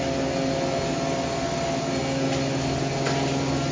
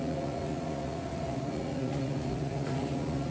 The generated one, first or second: second